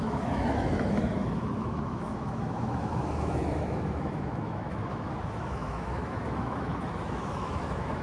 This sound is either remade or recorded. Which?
remade